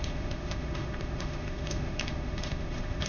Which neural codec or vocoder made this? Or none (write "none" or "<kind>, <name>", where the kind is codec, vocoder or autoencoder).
autoencoder, DAC-VAE